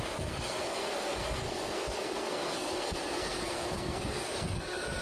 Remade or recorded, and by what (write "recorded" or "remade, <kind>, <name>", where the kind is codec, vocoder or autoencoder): remade, codec, SNAC